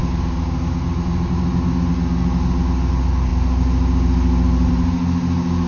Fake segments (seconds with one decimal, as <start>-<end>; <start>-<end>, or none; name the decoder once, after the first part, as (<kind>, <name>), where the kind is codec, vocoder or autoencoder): none

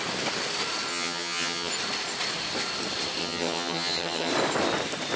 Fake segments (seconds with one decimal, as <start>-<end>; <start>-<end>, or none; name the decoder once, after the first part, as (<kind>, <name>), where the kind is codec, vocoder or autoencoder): 0.9-1.7 (vocoder, HiFi-GAN); 3.2-4.3

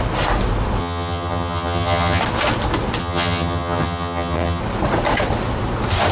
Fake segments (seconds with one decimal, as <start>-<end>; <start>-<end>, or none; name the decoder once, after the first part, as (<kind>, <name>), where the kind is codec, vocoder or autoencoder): 0.8-2.2 (vocoder, HiFi-GAN); 3.0-4.6

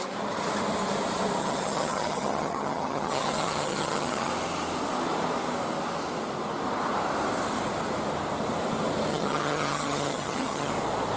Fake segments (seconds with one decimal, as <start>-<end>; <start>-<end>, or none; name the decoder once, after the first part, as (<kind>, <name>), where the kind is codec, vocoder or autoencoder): 1.4-4.3 (vocoder, HiFi-GAN); 9.1-10.7

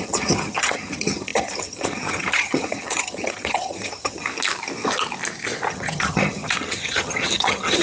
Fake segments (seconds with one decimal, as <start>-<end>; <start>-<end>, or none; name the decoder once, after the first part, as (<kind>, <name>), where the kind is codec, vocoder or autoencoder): 0.0-4.3 (vocoder, HiFi-GAN); 5.7-7.8